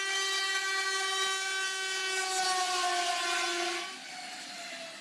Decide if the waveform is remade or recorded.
recorded